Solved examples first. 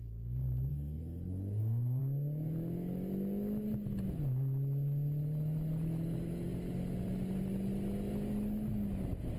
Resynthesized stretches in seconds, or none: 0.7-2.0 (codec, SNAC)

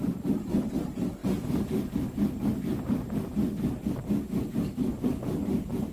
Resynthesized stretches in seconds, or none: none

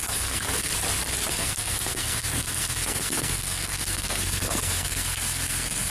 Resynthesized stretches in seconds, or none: 0.0-0.7 (codec, SNAC); 1.3-5.9

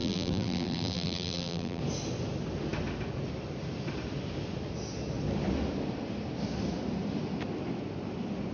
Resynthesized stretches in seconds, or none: 0.0-1.8 (vocoder, BigVGAN v2)